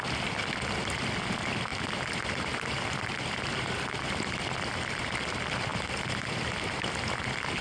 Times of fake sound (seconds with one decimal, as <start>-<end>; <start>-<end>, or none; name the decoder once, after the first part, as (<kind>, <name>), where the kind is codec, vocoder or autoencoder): none